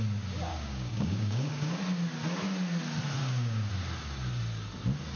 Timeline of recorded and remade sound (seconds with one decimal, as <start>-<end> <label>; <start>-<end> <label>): 0.0-0.5 recorded; 0.5-1.8 remade; 1.8-3.2 recorded; 3.2-3.7 remade; 3.7-5.2 recorded